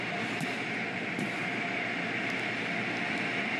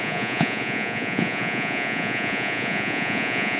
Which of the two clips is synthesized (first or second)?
second